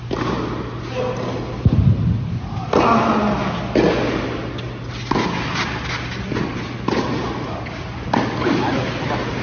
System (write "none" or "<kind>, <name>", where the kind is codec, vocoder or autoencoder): none